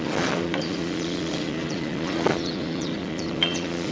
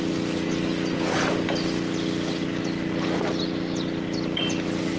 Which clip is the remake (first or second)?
first